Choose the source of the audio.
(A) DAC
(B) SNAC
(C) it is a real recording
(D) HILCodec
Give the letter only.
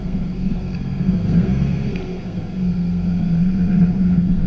B